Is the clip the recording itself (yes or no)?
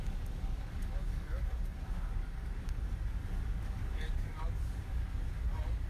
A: no